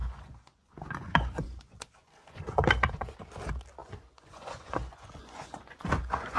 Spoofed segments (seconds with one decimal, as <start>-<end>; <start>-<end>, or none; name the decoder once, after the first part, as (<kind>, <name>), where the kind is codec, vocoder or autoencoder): 0.0-3.1 (vocoder, Vocos); 3.8-6.4